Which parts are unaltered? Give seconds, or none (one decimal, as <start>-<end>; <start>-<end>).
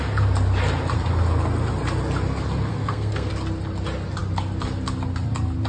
0.0-2.7; 3.3-5.7